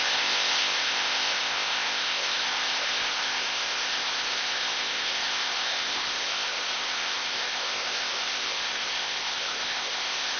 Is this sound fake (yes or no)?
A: yes